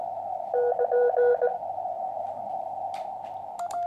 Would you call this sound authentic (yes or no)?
no